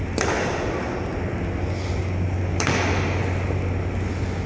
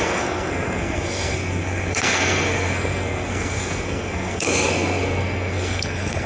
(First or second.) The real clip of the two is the first